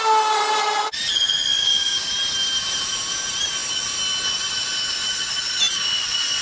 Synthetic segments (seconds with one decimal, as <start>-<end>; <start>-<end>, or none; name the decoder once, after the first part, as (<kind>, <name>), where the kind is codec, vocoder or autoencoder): 1.6-2.1 (codec, DAC)

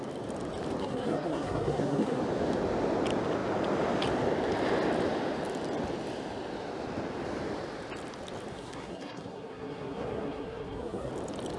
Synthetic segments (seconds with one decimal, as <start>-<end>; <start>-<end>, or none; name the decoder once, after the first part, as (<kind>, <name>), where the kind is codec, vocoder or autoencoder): 0.8-2.2 (codec, SNAC); 8.5-11.1